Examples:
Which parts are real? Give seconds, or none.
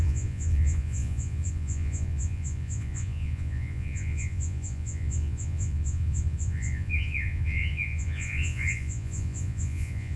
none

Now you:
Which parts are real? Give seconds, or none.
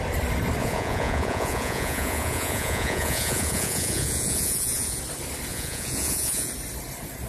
0.0-0.6; 5.0-5.5; 6.5-7.3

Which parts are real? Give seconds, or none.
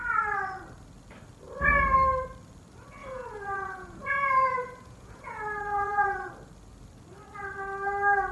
0.0-3.0; 6.3-8.3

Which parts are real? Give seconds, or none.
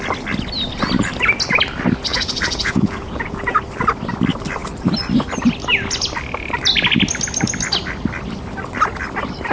0.0-2.1; 3.6-9.5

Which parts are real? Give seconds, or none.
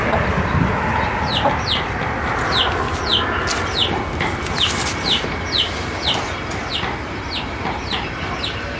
0.0-8.8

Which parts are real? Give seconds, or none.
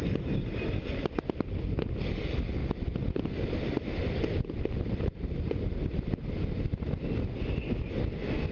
0.0-8.5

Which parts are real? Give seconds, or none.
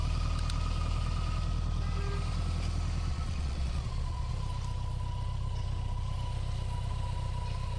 0.0-3.1; 4.3-7.8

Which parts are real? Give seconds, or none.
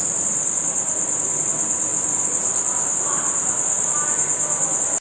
0.0-5.0